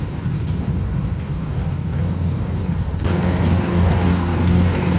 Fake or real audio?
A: fake